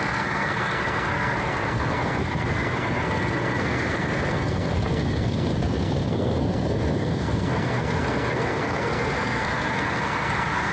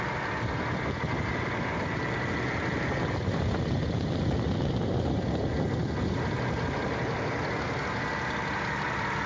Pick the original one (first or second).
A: second